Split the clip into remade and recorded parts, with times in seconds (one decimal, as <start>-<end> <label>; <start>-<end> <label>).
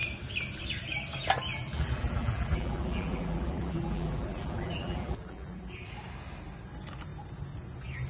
0.0-1.5 recorded; 1.5-5.8 remade; 5.8-8.1 recorded